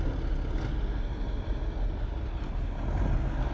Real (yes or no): yes